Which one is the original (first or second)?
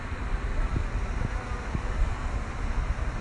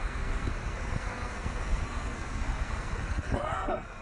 first